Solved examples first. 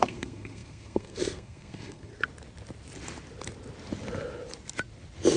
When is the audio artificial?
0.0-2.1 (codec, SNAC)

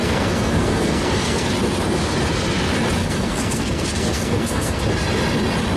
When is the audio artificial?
0.0-1.5 (codec, SNAC); 3.0-4.8

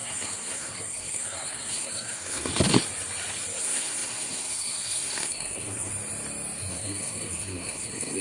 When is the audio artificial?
0.0-2.5 (codec, SNAC); 3.6-5.9; 6.7-8.2

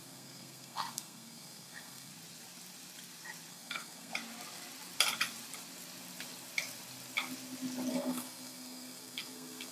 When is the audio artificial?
0.0-2.1 (codec, SNAC); 3.5-4.1; 7.9-9.7

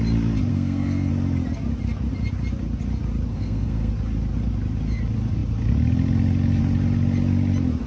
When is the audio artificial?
0.5-1.1 (codec, SNAC); 3.3-3.9

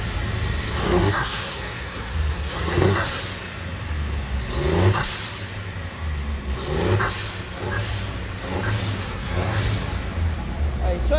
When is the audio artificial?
0.8-3.2 (codec, SNAC); 9.0-9.6